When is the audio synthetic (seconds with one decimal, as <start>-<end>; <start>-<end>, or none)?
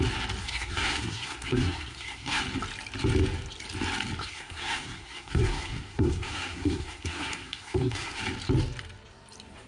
0.4-2.4; 4.2-8.2